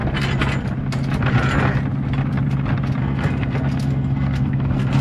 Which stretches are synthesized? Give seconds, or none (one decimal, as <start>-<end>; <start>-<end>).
3.0-5.0